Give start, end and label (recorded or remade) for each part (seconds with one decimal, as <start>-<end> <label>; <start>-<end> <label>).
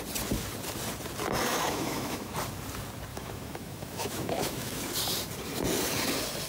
0.0-1.5 recorded; 1.5-2.3 remade; 2.3-3.1 recorded; 3.1-4.8 remade; 4.8-6.5 recorded